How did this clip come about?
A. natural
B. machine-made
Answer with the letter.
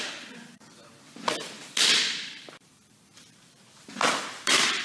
B